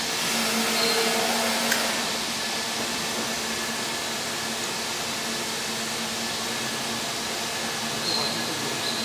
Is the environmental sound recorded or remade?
recorded